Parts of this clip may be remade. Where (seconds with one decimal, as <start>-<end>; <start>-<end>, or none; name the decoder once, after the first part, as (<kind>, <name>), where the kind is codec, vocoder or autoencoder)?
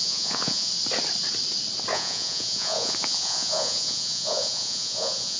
0.0-0.7 (vocoder, Vocos); 1.9-5.4